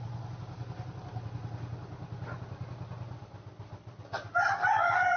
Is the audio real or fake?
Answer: real